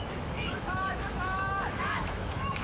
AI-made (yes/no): yes